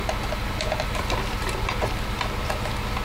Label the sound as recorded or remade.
remade